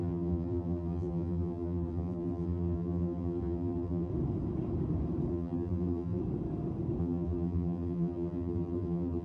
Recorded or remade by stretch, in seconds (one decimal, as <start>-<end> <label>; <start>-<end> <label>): 0.0-4.1 remade; 4.1-5.3 recorded; 5.3-6.2 remade; 6.2-7.0 recorded; 7.0-9.2 remade